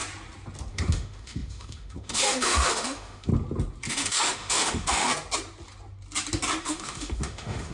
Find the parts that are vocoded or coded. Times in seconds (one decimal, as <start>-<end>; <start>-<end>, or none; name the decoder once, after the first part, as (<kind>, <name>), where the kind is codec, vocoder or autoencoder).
0.7-3.3 (autoencoder, DAC-VAE); 3.9-5.1; 6.6-7.7